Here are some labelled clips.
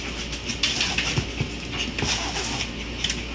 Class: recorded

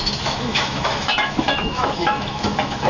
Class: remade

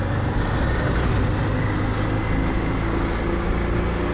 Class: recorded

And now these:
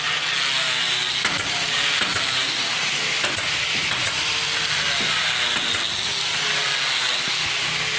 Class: recorded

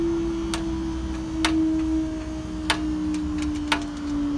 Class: recorded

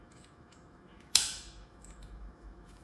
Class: remade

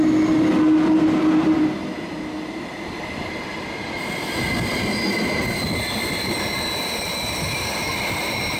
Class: recorded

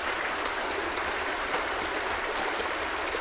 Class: recorded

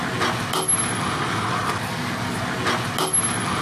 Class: recorded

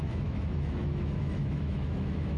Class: remade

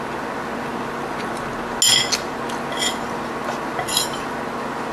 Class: recorded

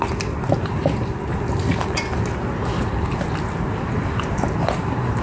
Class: recorded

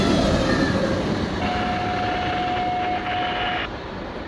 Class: recorded